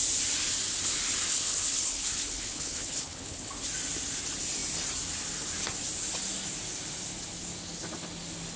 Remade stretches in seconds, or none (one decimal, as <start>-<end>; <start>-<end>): 1.3-3.5